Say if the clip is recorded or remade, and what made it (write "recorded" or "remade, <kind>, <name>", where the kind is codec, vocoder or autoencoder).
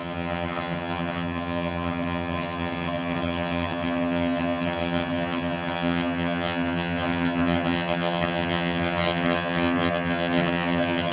remade, vocoder, HiFi-GAN